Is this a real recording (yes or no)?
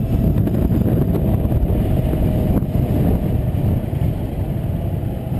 yes